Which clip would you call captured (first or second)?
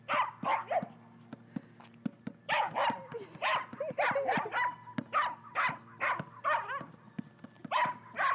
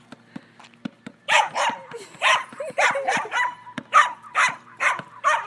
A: first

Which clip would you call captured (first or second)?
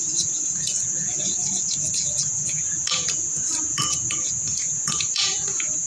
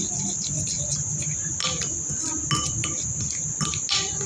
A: second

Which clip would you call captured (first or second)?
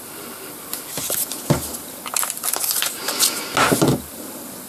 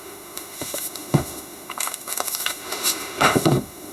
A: first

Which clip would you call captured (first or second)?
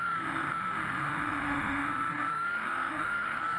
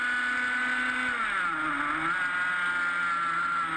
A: second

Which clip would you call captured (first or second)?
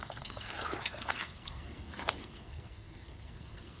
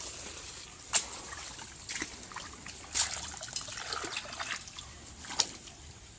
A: second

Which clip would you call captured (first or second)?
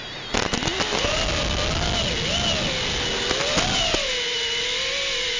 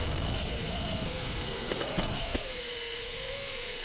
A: first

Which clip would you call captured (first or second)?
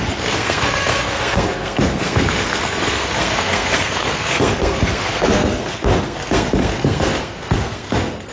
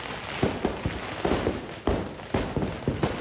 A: second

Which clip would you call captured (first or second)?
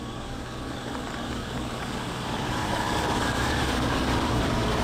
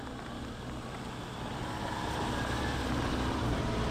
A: second